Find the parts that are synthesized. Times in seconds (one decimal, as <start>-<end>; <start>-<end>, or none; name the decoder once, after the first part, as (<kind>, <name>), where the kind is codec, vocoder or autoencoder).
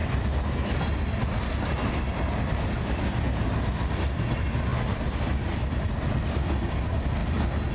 none